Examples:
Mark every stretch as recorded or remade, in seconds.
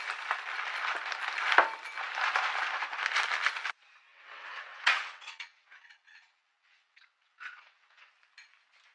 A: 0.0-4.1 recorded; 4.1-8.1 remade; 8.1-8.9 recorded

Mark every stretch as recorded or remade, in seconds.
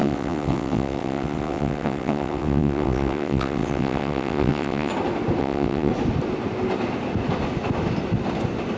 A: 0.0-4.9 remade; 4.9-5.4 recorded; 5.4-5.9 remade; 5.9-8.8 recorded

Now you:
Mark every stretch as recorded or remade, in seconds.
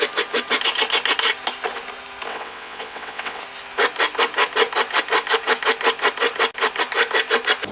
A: 0.0-2.3 recorded; 2.3-3.4 remade; 3.4-7.7 recorded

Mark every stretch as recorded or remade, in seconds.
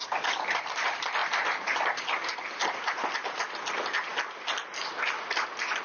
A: 0.0-5.8 recorded